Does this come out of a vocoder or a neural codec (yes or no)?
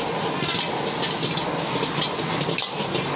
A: no